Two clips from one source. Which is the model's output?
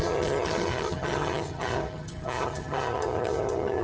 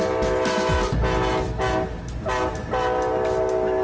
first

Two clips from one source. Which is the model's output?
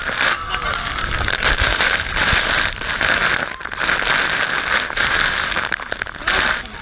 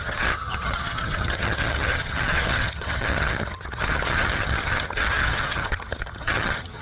second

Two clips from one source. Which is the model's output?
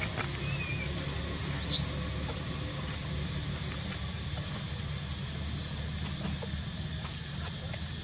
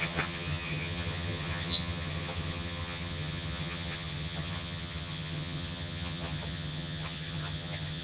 second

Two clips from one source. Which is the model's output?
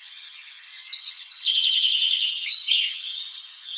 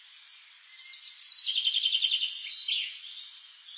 first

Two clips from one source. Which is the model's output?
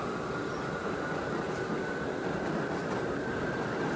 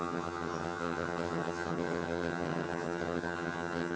second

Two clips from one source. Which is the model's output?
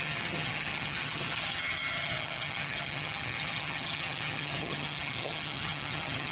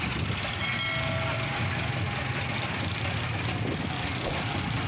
first